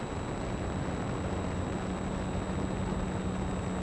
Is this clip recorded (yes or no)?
yes